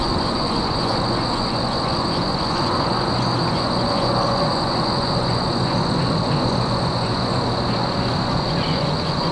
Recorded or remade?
remade